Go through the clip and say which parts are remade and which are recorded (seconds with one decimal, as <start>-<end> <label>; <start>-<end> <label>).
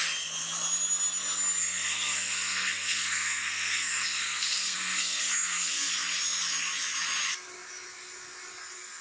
0.0-1.6 recorded; 1.6-5.9 remade; 5.9-9.0 recorded